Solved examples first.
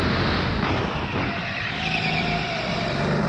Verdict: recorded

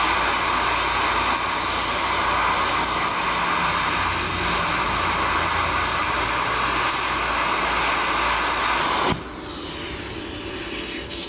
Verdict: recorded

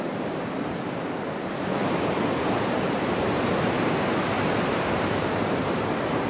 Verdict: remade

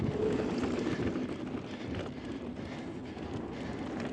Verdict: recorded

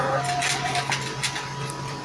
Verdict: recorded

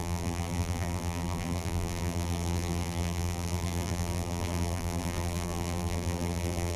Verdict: remade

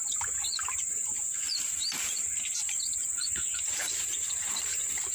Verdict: remade